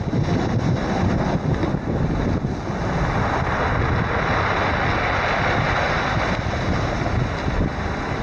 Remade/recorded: recorded